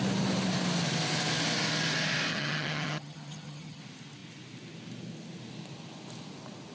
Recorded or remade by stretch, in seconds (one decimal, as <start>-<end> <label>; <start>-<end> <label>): 0.0-2.3 recorded; 2.3-3.8 remade; 3.8-6.7 recorded

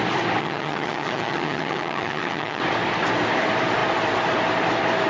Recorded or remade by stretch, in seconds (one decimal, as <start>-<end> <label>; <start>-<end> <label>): 0.0-0.4 recorded; 0.4-2.6 remade; 2.6-5.1 recorded

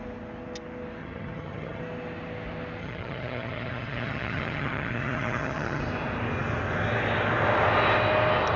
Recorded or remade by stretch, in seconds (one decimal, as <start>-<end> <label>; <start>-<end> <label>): 0.0-1.0 recorded; 1.0-1.8 remade; 1.8-2.8 recorded; 2.8-5.8 remade; 5.8-8.6 recorded

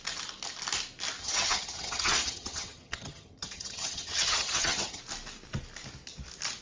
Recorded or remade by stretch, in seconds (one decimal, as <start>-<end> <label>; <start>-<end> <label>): 0.0-1.2 recorded; 1.2-5.0 remade; 5.0-6.6 recorded